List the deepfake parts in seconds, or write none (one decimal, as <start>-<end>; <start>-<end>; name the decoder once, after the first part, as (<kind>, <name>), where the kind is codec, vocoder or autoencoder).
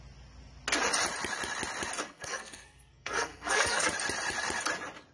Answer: 2.0-3.9 (codec, SNAC)